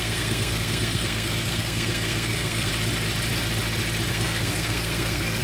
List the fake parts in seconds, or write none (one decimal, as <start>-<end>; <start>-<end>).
0.0-2.7; 4.1-5.4